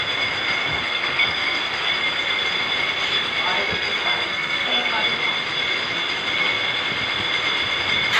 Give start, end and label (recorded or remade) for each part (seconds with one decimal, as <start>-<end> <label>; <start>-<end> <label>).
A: 0.0-0.7 recorded; 0.7-1.9 remade; 1.9-3.6 recorded; 3.6-4.9 remade; 4.9-8.2 recorded